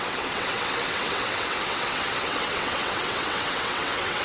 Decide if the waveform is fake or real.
fake